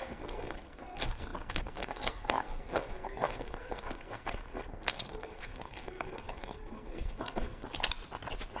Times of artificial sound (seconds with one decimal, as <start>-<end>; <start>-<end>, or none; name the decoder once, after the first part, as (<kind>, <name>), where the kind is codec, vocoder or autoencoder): 0.0-7.6 (codec, SNAC)